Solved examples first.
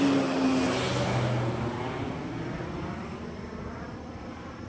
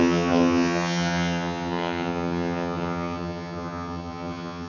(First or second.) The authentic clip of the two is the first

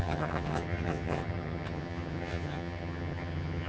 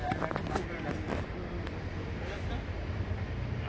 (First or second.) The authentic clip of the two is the second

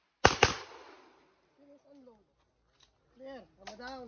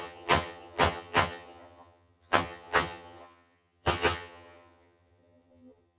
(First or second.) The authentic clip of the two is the first